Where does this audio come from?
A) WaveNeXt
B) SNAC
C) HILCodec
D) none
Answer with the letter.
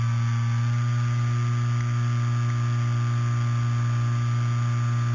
D